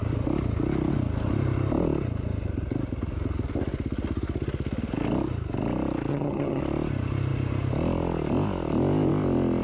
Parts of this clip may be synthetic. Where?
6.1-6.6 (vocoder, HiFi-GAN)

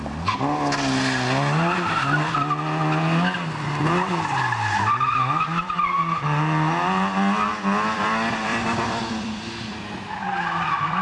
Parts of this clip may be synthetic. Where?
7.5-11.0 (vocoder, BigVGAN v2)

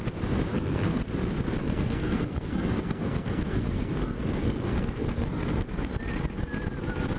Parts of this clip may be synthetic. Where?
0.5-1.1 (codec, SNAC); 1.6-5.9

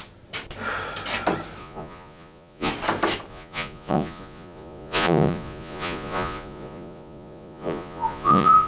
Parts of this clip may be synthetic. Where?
1.6-2.7 (vocoder, Vocos); 3.3-8.7

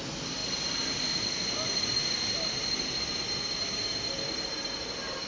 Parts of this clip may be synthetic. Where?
none

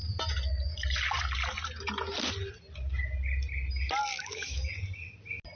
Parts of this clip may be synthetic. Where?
4.1-4.7 (autoencoder, DAC-VAE)

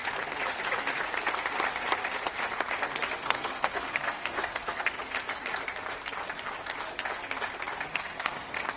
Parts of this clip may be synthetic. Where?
3.2-5.0 (codec, SNAC); 7.9-8.8

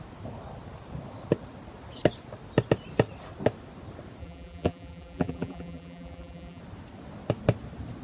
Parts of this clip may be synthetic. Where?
4.2-6.6 (vocoder, BigVGAN v2)